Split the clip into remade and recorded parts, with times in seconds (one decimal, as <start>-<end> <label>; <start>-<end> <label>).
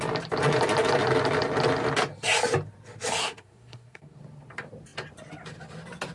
0.0-3.2 recorded; 3.2-4.2 remade; 4.2-6.1 recorded